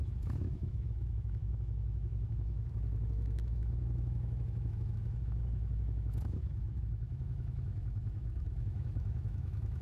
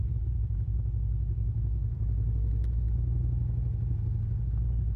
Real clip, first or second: second